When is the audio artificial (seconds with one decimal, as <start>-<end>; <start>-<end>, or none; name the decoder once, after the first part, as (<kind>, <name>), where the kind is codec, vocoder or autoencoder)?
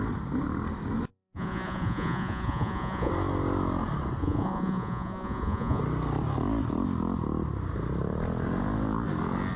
1.1-3.1 (vocoder, Vocos); 4.2-5.8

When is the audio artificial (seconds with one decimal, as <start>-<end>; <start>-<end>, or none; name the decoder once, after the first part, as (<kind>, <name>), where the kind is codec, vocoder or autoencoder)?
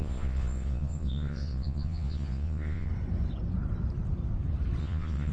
0.0-2.9 (vocoder, Vocos); 4.8-5.3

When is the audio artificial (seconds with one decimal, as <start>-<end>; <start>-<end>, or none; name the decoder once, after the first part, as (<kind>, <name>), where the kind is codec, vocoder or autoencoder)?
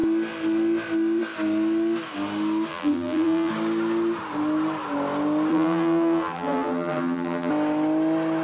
2.7-3.5 (vocoder, BigVGAN v2); 5.5-7.5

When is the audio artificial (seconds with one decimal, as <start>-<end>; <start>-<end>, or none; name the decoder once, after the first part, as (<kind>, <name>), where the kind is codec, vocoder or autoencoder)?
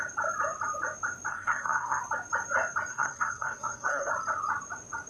1.3-2.0 (codec, SNAC); 2.9-4.1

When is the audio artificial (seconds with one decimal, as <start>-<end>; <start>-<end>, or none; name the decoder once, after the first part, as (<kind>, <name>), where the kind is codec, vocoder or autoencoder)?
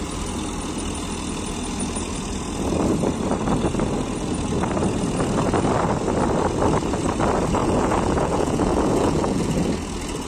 7.6-9.4 (vocoder, Vocos)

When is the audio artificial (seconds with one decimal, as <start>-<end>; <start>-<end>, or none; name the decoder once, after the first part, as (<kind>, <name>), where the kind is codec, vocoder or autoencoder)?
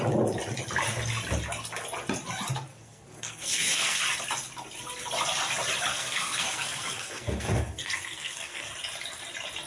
2.7-4.0 (codec, SNAC); 5.9-8.7